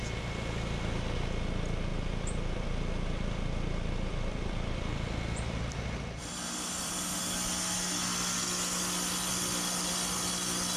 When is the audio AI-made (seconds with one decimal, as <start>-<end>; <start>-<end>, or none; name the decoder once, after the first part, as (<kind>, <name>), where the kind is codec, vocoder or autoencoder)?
1.9-6.9 (vocoder, BigVGAN v2)